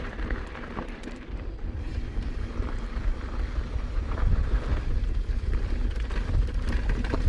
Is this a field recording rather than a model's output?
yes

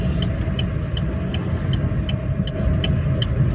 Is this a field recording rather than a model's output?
yes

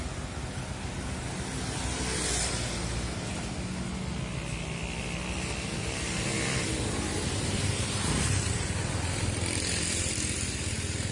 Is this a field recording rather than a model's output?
yes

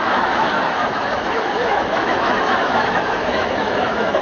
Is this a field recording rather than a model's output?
no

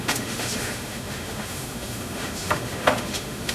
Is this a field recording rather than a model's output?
no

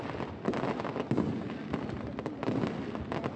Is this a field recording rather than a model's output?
yes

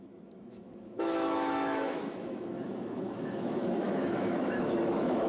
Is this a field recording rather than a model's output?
no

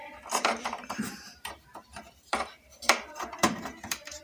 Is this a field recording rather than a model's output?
no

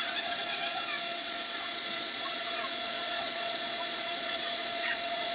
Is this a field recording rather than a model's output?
no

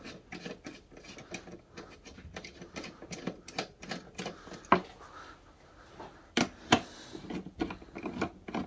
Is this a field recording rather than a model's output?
yes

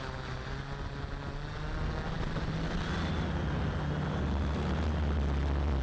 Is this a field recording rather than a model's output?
yes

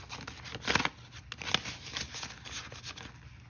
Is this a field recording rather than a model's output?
yes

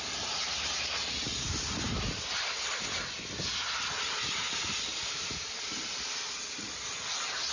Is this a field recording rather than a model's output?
yes